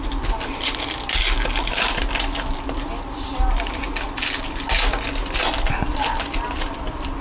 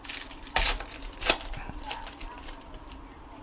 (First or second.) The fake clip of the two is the second